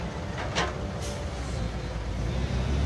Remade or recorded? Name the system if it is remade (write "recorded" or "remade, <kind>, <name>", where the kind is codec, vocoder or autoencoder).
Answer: recorded